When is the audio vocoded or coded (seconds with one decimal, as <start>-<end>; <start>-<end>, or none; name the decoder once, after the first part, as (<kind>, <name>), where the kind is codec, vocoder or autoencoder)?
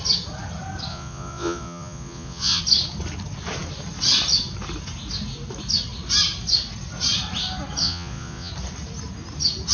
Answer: 0.9-2.6 (vocoder, Vocos); 7.8-8.5